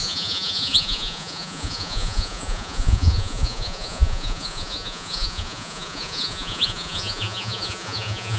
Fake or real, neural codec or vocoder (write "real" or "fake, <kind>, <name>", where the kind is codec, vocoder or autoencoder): fake, vocoder, Vocos